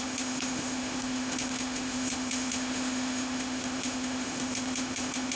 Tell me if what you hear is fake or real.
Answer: fake